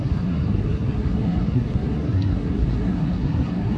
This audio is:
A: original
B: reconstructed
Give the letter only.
B